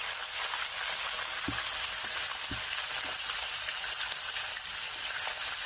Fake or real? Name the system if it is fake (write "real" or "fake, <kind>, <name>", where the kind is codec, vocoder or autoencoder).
real